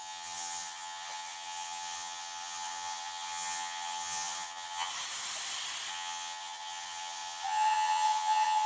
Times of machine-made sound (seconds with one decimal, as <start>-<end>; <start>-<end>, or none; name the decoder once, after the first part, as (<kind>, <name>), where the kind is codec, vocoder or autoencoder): 0.0-4.9 (vocoder, HiFi-GAN); 5.9-8.7